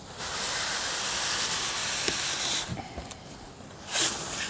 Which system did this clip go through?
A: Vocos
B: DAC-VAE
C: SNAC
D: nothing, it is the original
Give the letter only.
D